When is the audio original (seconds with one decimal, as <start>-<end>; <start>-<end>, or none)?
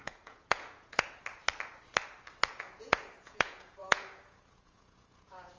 1.2-2.5